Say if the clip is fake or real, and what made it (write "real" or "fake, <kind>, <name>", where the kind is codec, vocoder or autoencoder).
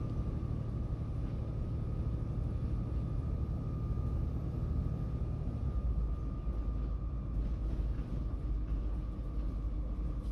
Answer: real